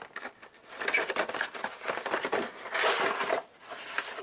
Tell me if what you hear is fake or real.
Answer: real